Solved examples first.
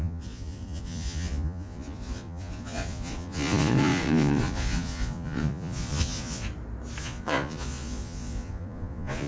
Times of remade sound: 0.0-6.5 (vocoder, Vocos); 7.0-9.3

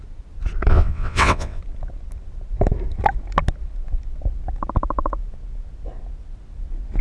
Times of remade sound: 0.7-1.6 (vocoder, WaveNeXt)

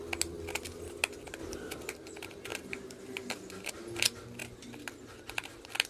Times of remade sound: 1.4-1.9 (vocoder, BigVGAN v2)

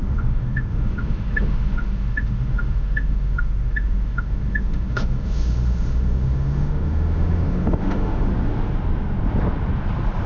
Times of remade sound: 0.0-8.3 (autoencoder, DAC-VAE)

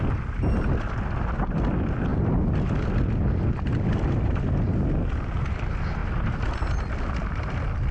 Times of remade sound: none

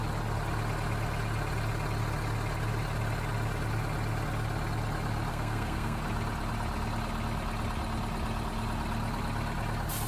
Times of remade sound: 5.3-6.0 (codec, SNAC)